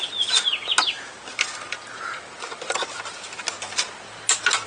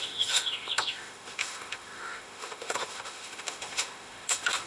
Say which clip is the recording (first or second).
first